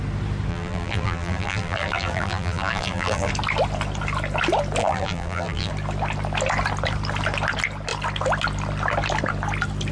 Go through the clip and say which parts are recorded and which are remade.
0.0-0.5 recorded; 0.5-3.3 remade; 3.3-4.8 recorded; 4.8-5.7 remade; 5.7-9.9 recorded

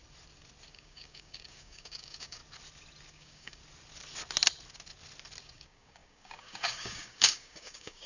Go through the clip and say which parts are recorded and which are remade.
0.0-0.7 recorded; 0.7-2.4 remade; 2.4-3.1 recorded; 3.1-3.6 remade; 3.6-5.4 recorded; 5.4-8.1 remade

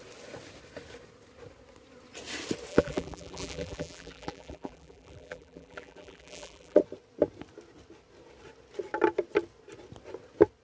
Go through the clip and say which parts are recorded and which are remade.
0.0-2.7 recorded; 2.7-6.8 remade; 6.8-10.6 recorded